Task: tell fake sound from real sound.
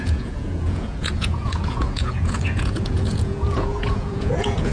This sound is fake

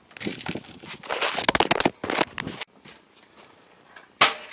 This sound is real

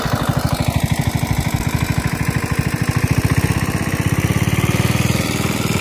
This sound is real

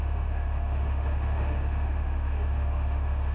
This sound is fake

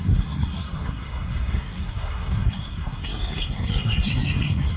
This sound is fake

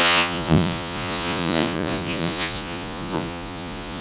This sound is fake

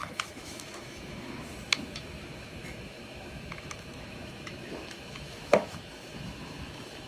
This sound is fake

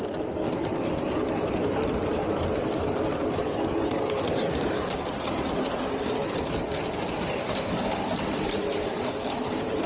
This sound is real